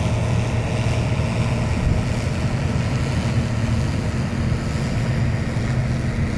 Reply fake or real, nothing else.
real